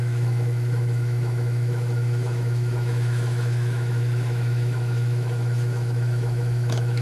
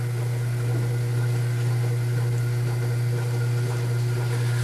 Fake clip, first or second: first